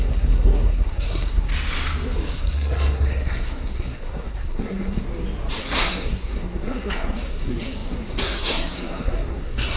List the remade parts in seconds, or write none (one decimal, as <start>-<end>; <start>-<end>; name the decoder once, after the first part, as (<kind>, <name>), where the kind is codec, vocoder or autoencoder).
0.0-1.5 (codec, SNAC); 2.3-5.0; 5.6-9.8